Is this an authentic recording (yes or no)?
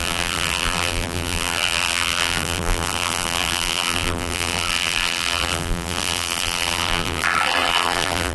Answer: no